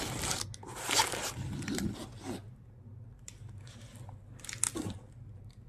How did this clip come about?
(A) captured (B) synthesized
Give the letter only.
A